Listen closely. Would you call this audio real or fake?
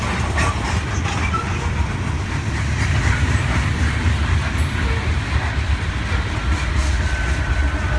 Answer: real